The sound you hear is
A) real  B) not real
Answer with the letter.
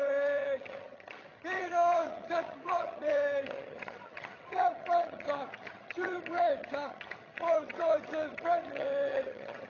B